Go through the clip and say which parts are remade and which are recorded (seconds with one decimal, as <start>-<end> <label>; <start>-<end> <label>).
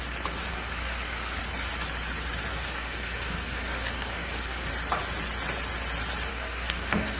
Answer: 0.0-0.5 recorded; 0.5-1.4 remade; 1.4-2.5 recorded; 2.5-4.7 remade; 4.7-6.3 recorded; 6.3-7.2 remade